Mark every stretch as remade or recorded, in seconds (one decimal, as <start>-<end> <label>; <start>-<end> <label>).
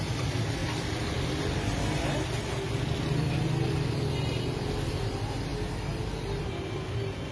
0.0-7.3 recorded